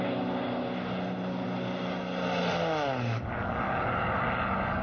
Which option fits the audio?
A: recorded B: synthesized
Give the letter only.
A